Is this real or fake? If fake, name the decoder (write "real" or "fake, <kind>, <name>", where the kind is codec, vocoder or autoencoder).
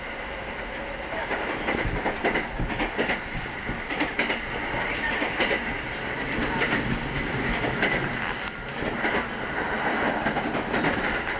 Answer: real